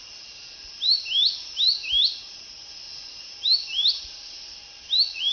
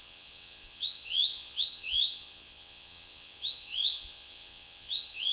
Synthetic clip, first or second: second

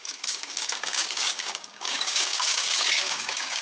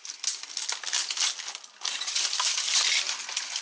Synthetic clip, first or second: first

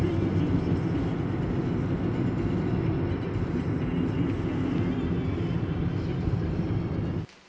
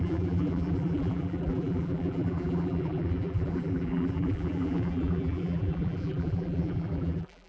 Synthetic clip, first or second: second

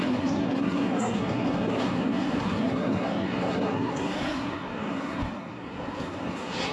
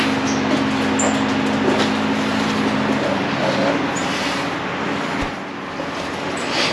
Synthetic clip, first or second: first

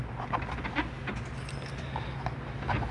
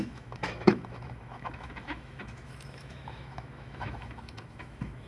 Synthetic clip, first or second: second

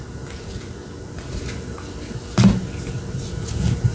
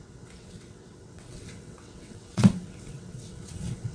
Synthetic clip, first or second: second